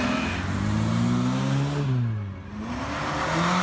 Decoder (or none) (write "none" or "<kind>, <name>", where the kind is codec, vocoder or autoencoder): none